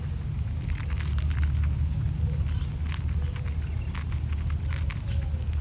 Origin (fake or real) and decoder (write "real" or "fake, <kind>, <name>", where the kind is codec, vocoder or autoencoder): real